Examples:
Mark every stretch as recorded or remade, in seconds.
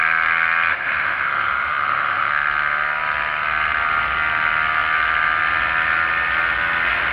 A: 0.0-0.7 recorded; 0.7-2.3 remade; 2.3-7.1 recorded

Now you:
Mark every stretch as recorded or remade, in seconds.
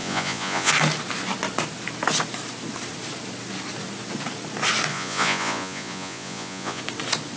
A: 0.0-0.7 remade; 0.7-4.9 recorded; 4.9-6.8 remade; 6.8-7.4 recorded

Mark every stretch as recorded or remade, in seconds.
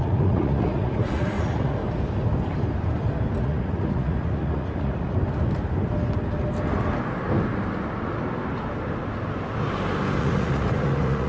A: 0.0-1.8 remade; 1.8-3.4 recorded; 3.4-5.2 remade; 5.2-10.2 recorded; 10.2-11.3 remade